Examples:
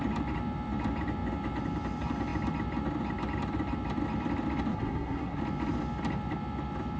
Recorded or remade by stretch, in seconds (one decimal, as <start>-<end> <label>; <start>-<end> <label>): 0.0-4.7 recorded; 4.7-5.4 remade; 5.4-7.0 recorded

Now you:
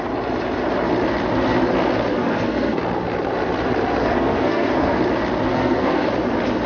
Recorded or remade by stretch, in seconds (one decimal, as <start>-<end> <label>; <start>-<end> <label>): 0.0-2.1 recorded; 2.1-2.8 remade; 2.8-4.0 recorded; 4.0-5.0 remade; 5.0-5.5 recorded; 5.5-6.1 remade; 6.1-6.7 recorded

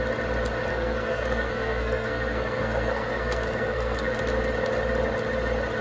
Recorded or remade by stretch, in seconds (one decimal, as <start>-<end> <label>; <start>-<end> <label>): 0.0-0.7 recorded; 0.7-4.2 remade; 4.2-5.8 recorded